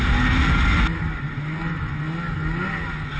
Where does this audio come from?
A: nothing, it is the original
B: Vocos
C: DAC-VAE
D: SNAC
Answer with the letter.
A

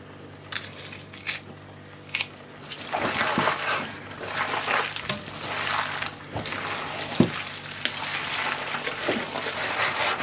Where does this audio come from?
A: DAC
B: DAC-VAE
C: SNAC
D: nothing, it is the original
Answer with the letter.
D